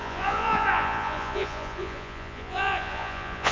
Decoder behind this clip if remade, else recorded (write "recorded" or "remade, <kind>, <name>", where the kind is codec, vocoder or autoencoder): remade, vocoder, Vocos